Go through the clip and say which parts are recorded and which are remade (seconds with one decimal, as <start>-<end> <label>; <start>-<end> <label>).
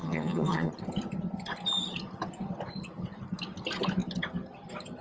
0.0-0.7 remade; 0.7-5.0 recorded